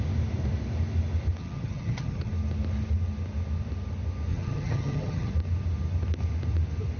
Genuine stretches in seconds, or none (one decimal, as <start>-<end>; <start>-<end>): 0.0-1.4; 2.3-4.3; 5.3-7.0